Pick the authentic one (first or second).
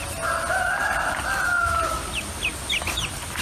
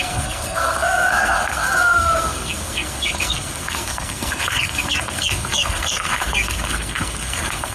first